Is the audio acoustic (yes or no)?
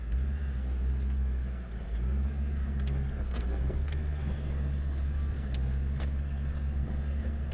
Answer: no